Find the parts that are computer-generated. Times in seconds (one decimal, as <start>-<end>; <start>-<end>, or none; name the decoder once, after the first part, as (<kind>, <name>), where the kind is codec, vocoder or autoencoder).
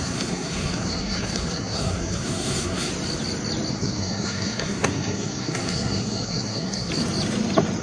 0.0-2.9 (codec, SNAC); 3.7-6.9